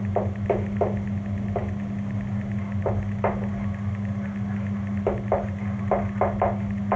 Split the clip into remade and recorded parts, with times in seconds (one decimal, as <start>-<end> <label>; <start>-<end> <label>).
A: 0.0-7.0 recorded